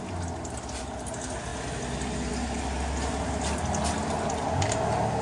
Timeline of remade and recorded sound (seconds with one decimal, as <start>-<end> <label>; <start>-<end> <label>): 0.0-5.2 recorded